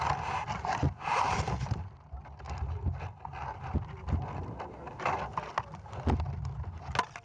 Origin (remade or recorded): recorded